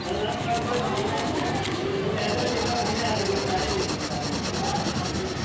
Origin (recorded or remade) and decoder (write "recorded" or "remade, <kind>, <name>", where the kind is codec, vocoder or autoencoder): recorded